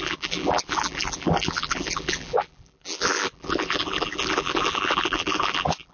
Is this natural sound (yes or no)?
no